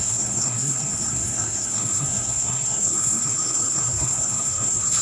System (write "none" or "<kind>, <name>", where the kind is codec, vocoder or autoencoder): codec, SNAC